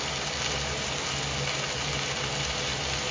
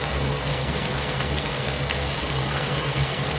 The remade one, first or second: second